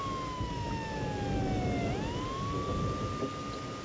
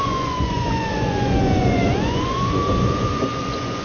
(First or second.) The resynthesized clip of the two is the second